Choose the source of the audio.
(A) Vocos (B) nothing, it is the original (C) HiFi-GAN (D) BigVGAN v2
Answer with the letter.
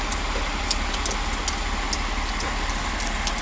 B